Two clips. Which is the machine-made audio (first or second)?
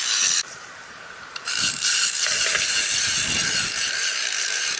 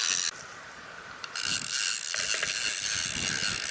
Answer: first